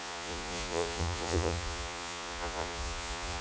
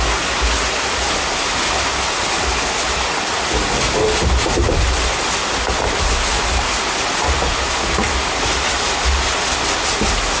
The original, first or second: second